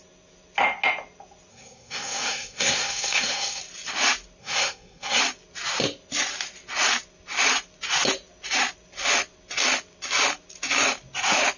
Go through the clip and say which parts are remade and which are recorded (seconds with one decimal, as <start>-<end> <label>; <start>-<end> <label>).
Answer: 0.0-1.5 recorded; 1.5-3.6 remade; 3.6-4.4 recorded; 4.4-5.2 remade; 5.2-11.6 recorded